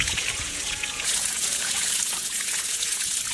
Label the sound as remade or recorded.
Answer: remade